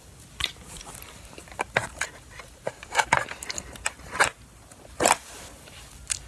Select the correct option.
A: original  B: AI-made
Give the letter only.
B